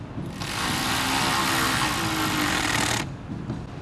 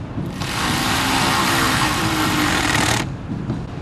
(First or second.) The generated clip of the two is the second